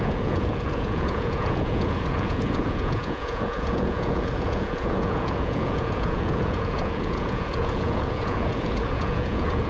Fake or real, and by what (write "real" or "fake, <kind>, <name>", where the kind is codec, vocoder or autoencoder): fake, vocoder, Vocos